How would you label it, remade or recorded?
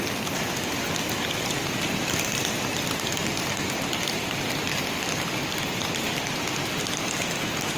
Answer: recorded